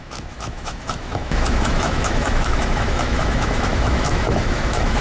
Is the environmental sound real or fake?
fake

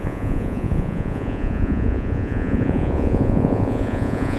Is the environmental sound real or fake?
fake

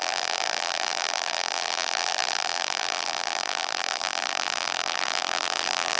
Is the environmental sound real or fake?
fake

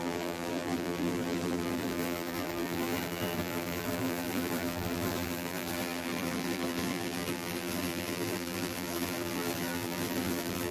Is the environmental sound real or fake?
fake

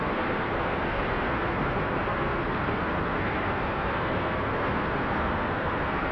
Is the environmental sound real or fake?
fake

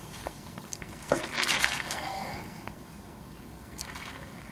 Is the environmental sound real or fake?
fake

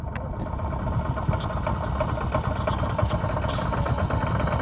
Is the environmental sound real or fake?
real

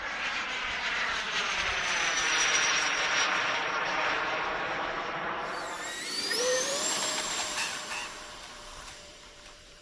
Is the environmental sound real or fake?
fake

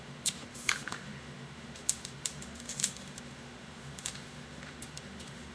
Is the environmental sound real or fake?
fake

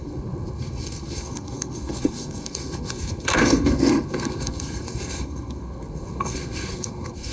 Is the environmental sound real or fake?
fake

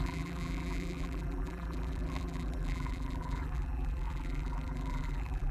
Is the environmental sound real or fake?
fake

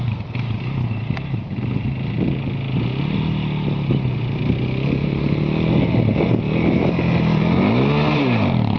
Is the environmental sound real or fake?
real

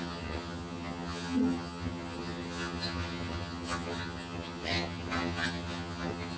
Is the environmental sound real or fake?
fake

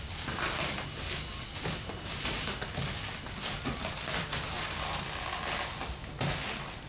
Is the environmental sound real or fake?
real